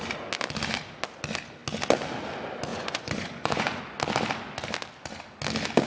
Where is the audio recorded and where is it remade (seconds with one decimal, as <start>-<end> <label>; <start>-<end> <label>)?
0.0-2.7 recorded; 2.7-3.8 remade; 3.8-5.9 recorded